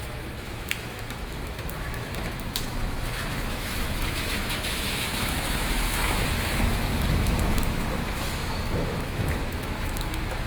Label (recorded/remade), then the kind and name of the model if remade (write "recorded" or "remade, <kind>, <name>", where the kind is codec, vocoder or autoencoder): remade, autoencoder, DAC-VAE